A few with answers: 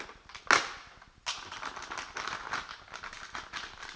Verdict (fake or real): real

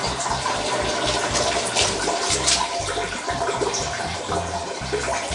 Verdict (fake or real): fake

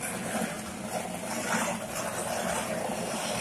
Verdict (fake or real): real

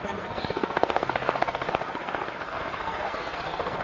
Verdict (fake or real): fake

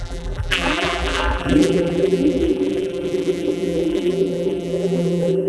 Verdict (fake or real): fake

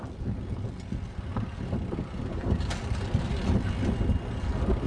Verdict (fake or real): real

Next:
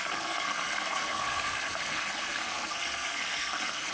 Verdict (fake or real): fake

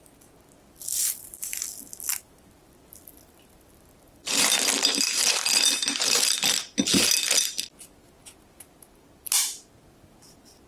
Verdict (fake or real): real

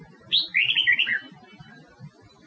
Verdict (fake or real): real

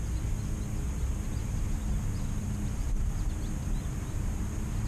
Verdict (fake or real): real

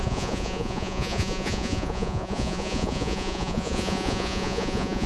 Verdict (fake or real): fake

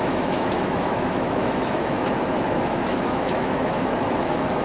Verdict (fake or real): fake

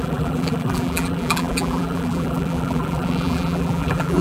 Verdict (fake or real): fake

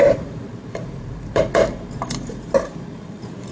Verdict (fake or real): fake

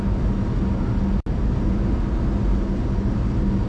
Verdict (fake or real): real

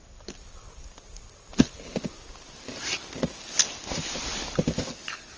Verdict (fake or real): real